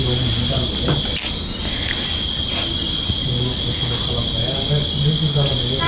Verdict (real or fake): real